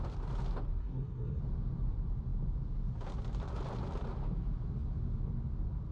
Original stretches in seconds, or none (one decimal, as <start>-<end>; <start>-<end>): 0.0-0.8; 1.4-5.9